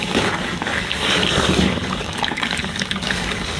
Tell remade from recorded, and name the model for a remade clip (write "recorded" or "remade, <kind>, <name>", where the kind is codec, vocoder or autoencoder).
remade, codec, DAC